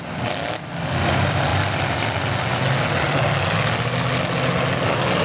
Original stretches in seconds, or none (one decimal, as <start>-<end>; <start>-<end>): 0.0-5.2